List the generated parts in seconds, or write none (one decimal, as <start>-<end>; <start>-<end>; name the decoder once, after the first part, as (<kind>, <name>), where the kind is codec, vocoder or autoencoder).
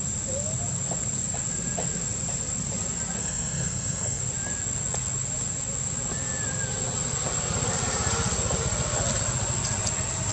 3.2-4.2 (codec, SNAC)